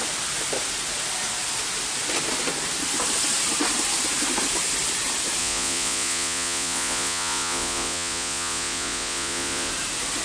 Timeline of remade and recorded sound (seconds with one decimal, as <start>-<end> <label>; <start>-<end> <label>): 0.0-5.4 recorded; 5.4-9.7 remade; 9.7-10.2 recorded